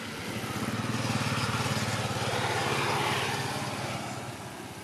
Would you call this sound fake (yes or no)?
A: no